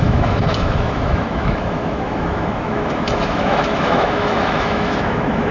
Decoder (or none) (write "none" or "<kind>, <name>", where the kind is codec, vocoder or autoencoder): autoencoder, DAC-VAE